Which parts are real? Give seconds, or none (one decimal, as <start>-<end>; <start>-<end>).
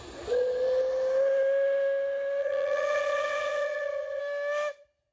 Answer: 0.0-2.4; 4.2-5.1